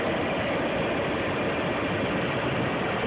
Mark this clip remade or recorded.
recorded